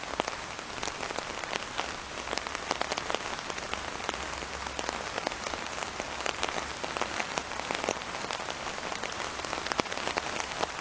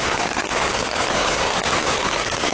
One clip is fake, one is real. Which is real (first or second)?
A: first